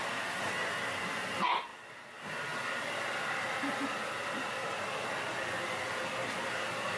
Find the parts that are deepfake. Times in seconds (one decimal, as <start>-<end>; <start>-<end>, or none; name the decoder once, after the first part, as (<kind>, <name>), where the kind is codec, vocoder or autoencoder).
1.7-5.9 (vocoder, BigVGAN v2)